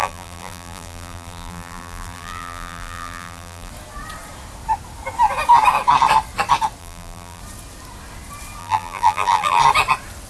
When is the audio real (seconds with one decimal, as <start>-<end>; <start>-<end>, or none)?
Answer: 3.7-6.8; 7.4-8.6; 9.6-10.3